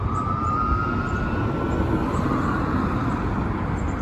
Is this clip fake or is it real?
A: fake